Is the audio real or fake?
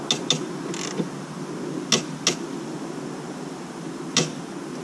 real